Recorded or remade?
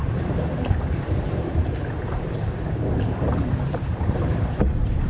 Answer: remade